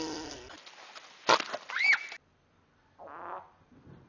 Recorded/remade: recorded